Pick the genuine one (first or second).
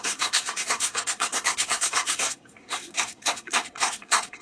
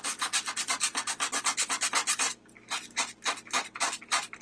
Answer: second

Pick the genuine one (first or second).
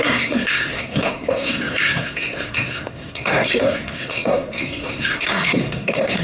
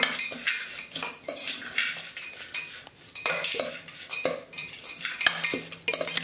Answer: second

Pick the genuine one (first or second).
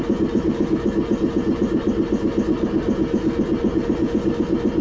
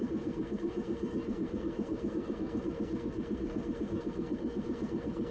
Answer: first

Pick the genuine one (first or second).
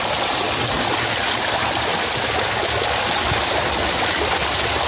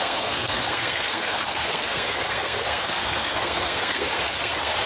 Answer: first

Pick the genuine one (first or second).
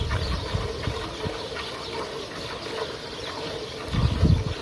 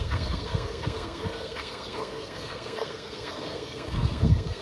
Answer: first